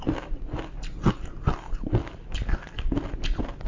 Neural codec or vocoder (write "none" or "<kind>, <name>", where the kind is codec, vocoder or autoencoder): none